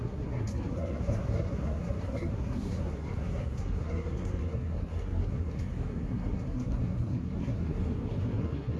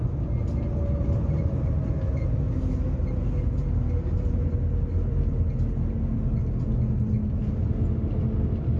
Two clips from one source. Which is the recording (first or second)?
second